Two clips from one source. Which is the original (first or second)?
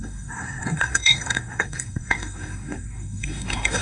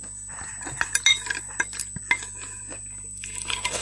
second